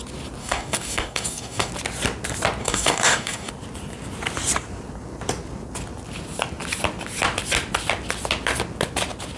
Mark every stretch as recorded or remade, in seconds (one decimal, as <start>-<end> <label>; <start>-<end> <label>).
0.0-0.4 recorded; 0.4-1.7 remade; 1.7-2.6 recorded; 2.6-3.5 remade; 3.5-9.4 recorded

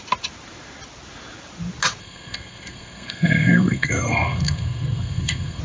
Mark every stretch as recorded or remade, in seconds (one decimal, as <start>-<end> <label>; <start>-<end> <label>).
0.0-2.0 recorded; 2.0-5.6 remade

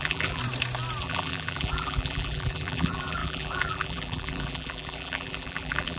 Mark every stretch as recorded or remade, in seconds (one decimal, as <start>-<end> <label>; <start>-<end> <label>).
0.0-0.4 remade; 0.4-1.0 recorded; 1.0-6.0 remade

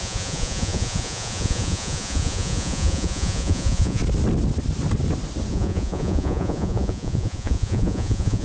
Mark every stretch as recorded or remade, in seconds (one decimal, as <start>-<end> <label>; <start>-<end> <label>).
0.0-4.0 remade; 4.0-5.5 recorded; 5.5-8.4 remade

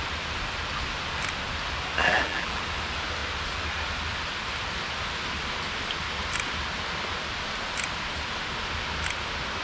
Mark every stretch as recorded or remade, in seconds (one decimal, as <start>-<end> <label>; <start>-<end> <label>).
0.0-2.0 recorded; 2.0-2.6 remade; 2.6-9.6 recorded

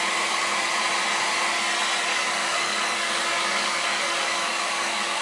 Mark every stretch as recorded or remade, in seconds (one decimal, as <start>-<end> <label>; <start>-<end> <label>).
0.0-2.1 recorded; 2.1-5.2 remade

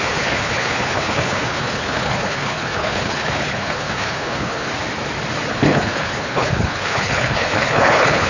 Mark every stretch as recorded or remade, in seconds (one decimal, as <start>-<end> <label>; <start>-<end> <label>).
0.0-4.7 remade; 4.7-5.5 recorded; 5.5-8.3 remade